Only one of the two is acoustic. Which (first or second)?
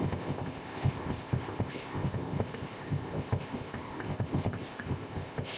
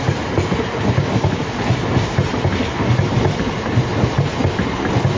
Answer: second